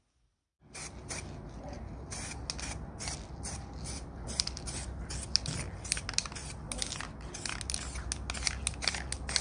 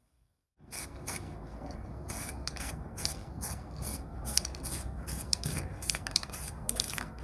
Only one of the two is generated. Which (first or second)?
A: second